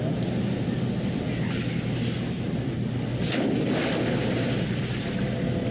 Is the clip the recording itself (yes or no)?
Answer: yes